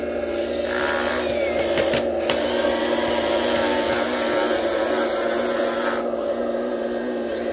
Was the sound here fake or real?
real